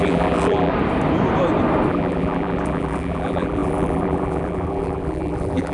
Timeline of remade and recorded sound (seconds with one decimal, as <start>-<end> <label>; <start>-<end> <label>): 0.0-0.7 remade; 0.7-1.9 recorded; 1.9-5.7 remade